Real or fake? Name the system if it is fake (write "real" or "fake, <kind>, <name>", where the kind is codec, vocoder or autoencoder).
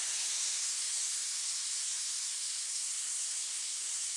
fake, codec, SNAC